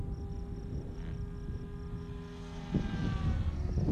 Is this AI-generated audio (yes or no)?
no